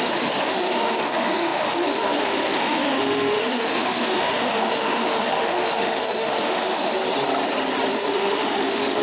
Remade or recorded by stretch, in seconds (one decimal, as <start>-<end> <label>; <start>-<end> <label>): 0.0-7.0 remade; 7.0-7.9 recorded; 7.9-9.0 remade